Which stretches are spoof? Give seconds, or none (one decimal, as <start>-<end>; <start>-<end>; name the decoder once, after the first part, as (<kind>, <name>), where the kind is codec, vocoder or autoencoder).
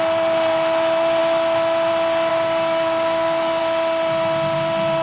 2.3-3.6 (codec, DAC)